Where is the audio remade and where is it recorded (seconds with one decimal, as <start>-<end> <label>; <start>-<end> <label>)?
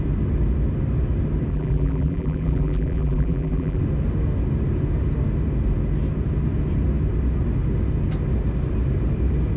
0.0-1.5 recorded; 1.5-3.8 remade; 3.8-9.6 recorded